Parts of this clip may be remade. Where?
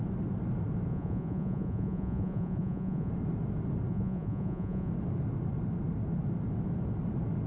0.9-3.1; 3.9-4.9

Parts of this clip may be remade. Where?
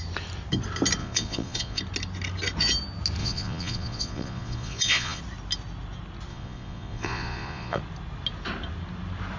1.0-1.8; 3.2-5.2; 6.3-7.8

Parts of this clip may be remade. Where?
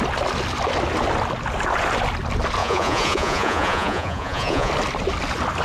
2.6-4.7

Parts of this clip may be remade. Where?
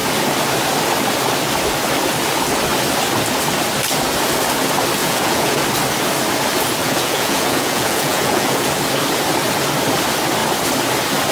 5.0-5.6; 6.8-8.7